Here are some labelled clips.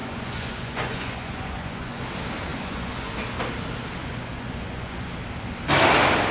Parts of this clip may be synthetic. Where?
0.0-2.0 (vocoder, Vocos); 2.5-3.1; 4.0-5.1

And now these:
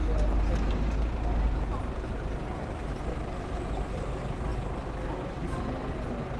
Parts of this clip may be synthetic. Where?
none